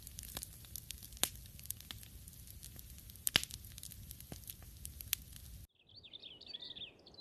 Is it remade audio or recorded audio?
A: recorded